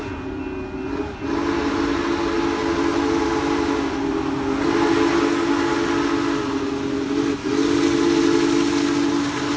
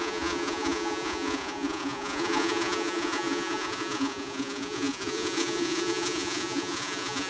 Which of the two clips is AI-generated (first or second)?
second